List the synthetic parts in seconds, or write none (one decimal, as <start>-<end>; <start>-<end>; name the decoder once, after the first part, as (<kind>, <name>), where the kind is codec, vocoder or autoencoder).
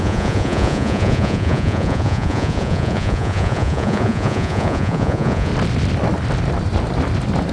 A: 0.0-5.5 (vocoder, Vocos)